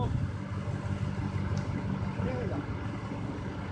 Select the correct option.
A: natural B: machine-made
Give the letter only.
A